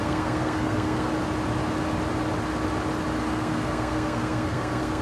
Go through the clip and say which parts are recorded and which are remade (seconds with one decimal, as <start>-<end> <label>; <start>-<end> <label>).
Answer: 0.0-1.1 remade; 1.1-3.2 recorded; 3.2-5.0 remade